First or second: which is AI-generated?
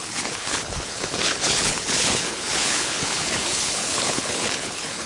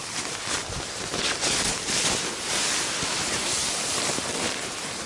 first